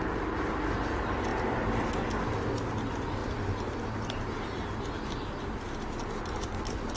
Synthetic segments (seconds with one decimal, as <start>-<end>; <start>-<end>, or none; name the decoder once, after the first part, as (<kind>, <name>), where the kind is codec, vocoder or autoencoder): none